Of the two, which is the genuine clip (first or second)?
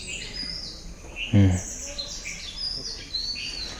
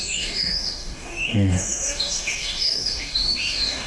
first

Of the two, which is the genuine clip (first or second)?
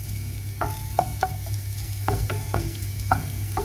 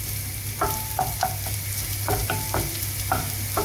second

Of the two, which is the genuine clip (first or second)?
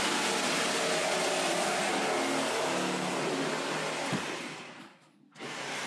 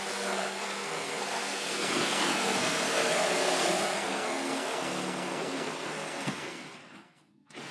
first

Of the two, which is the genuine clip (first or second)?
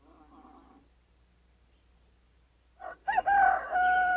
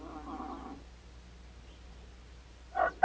second